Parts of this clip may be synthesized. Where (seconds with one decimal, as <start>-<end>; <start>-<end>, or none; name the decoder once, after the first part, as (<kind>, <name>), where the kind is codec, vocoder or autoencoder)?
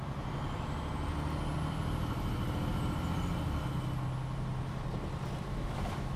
5.5-6.2 (autoencoder, DAC-VAE)